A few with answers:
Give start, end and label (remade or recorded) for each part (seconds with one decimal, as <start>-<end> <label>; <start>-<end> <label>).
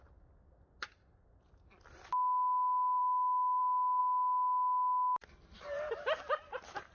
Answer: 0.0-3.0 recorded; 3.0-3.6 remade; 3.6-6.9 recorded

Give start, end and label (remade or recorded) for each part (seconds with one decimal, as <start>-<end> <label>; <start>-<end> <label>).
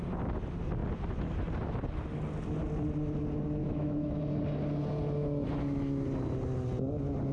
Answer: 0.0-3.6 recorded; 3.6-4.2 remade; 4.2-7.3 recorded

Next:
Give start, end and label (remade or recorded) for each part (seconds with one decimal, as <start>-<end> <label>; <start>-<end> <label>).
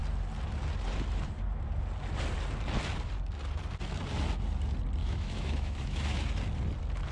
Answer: 0.0-5.0 recorded; 5.0-6.3 remade; 6.3-7.1 recorded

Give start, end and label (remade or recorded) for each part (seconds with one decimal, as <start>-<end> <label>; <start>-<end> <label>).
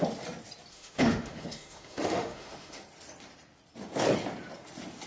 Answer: 0.0-0.7 recorded; 0.7-2.8 remade; 2.8-5.1 recorded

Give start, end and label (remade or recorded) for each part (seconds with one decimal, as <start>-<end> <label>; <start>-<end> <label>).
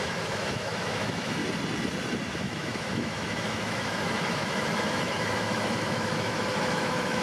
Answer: 0.0-1.4 remade; 1.4-2.3 recorded; 2.3-7.2 remade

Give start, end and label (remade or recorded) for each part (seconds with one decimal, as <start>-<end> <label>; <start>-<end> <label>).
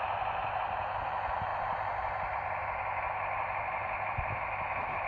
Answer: 0.0-5.1 recorded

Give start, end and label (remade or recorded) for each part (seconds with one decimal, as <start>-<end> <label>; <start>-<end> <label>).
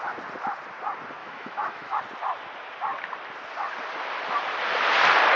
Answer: 0.0-1.2 recorded; 1.2-2.0 remade; 2.0-5.4 recorded